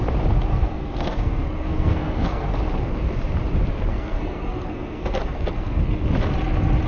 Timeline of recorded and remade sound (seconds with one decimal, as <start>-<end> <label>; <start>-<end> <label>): 0.0-0.5 recorded; 0.5-2.5 remade; 2.5-3.9 recorded; 3.9-5.8 remade; 5.8-6.9 recorded